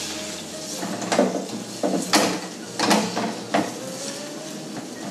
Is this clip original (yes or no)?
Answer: yes